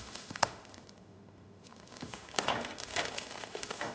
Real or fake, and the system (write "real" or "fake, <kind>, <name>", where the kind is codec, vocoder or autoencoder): fake, autoencoder, DAC-VAE